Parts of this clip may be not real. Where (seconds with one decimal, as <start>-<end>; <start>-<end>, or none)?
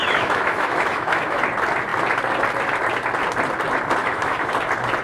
0.0-1.4; 4.0-4.5